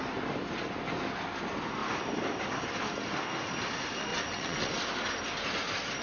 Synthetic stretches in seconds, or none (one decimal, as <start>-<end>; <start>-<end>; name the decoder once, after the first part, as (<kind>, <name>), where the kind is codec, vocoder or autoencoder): 4.1-4.7 (vocoder, WaveNeXt)